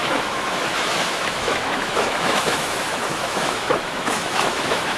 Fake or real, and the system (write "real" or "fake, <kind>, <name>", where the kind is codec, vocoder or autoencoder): fake, autoencoder, DAC-VAE